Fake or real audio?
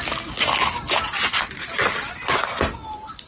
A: real